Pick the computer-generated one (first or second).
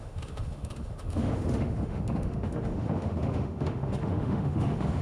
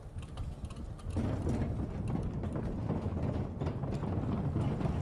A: first